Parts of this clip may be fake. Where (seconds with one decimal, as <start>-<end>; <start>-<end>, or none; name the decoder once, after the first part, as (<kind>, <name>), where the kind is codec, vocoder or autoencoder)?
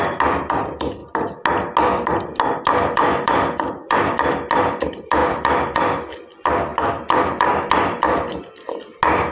0.0-1.0 (vocoder, BigVGAN v2); 2.6-6.7